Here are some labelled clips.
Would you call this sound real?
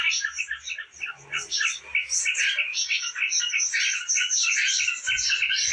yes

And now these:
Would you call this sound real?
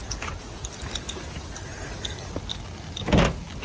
yes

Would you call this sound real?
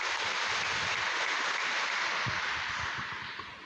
yes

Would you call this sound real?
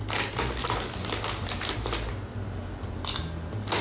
yes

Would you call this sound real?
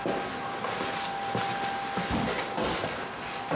yes